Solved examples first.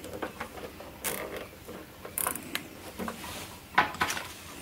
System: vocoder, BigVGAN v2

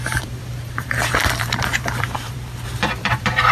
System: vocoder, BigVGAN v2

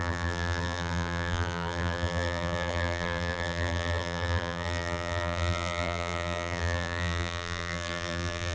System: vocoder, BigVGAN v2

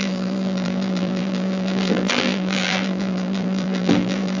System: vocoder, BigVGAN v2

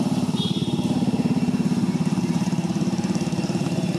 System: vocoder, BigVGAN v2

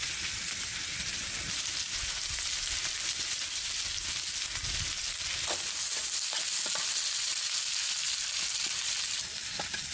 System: none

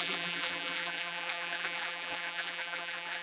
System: vocoder, BigVGAN v2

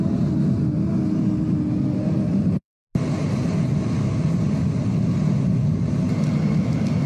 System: none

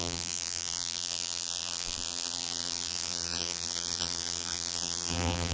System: vocoder, BigVGAN v2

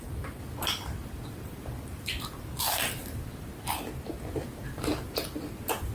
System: none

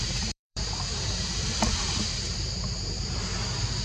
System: vocoder, BigVGAN v2